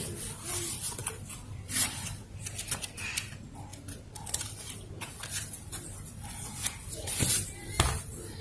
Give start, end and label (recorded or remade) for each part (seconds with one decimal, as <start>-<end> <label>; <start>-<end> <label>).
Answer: 0.0-8.4 recorded